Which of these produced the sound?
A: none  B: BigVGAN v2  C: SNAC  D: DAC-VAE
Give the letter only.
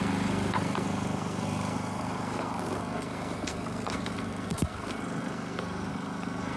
C